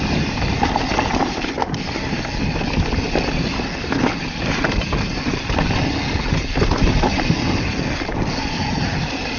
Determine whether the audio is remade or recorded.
recorded